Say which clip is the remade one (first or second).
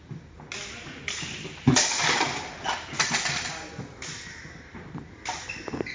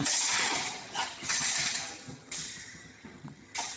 second